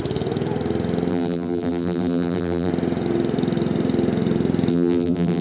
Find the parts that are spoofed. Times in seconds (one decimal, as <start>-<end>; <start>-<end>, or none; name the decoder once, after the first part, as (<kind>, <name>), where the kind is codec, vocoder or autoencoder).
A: 1.1-2.7 (vocoder, BigVGAN v2); 4.7-5.4